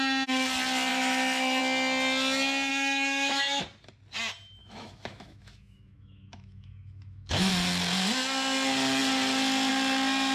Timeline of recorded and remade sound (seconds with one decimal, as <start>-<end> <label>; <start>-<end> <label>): 0.0-0.9 recorded; 0.9-1.6 remade; 1.6-2.7 recorded; 2.7-3.6 remade; 3.6-4.6 recorded; 4.6-7.5 remade; 7.5-10.3 recorded